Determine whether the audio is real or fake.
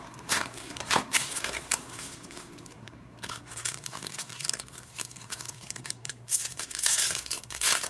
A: fake